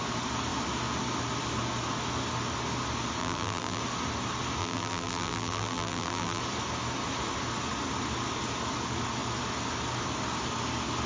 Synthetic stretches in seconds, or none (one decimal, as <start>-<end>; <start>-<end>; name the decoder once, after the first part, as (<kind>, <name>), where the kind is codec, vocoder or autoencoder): 3.2-3.8 (vocoder, BigVGAN v2); 4.6-6.4